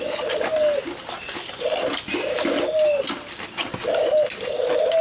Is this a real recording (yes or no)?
yes